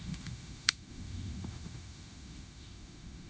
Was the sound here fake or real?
fake